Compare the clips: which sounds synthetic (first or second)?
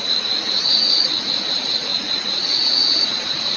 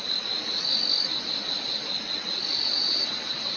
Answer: first